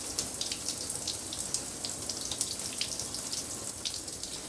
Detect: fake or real real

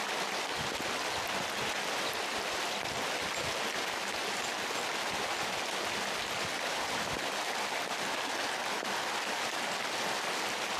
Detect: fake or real real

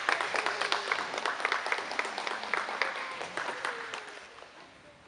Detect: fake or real real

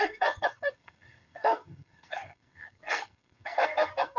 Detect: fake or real fake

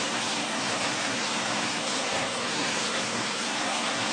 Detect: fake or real fake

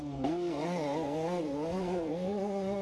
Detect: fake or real fake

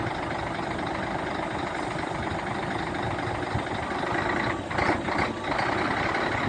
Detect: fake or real real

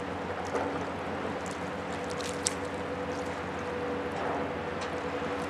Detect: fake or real real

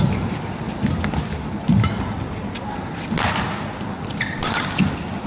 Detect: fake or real real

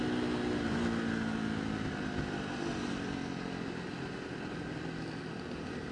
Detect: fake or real real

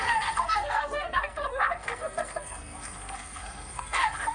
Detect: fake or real fake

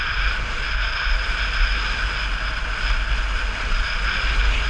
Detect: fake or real real